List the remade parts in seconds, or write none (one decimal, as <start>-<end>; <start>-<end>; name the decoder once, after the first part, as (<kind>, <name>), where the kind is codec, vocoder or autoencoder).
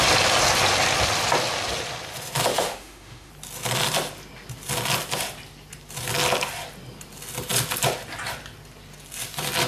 2.5-3.3 (autoencoder, DAC-VAE)